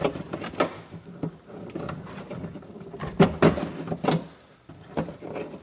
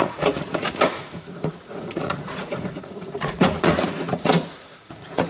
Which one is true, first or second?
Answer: first